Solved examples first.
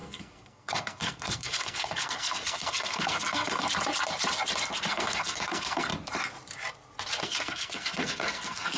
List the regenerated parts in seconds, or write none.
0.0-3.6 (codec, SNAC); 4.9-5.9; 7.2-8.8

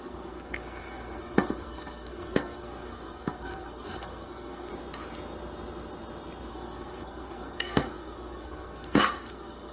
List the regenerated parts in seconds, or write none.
0.0-4.7 (codec, SNAC); 6.5-9.7

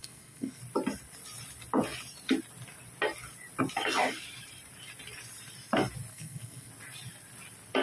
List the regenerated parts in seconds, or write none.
0.0-0.6 (codec, SNAC); 6.1-6.7

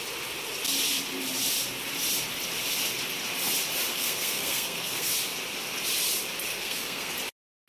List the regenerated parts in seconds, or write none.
3.9-5.1 (codec, SNAC); 6.5-7.1

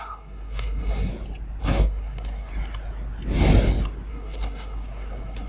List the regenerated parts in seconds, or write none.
0.0-1.1 (codec, SNAC); 1.6-2.5; 4.1-5.5